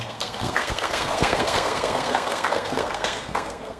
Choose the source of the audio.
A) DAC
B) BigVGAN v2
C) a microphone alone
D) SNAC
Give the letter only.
D